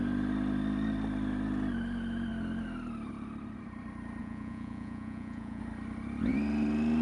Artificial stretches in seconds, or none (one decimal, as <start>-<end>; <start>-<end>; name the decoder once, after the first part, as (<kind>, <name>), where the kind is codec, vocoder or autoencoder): 4.2-5.6 (vocoder, Vocos)